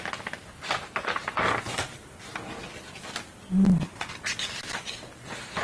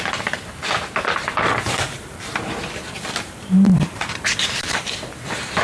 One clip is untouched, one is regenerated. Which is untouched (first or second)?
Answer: first